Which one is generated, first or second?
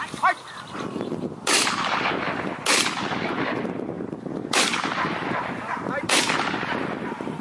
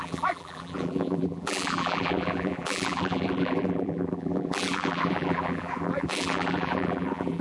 second